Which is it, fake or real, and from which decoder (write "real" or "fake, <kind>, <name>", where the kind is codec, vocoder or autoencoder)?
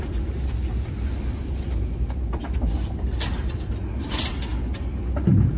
real